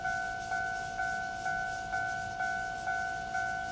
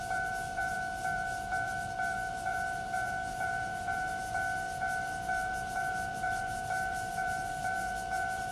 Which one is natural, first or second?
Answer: first